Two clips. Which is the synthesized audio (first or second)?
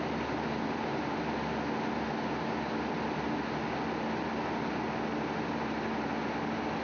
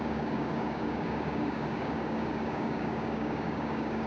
second